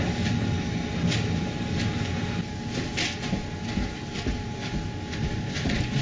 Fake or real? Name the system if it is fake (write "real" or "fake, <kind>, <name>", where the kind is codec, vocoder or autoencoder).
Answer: real